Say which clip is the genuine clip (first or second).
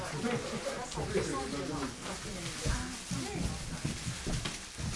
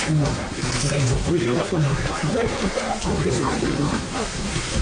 first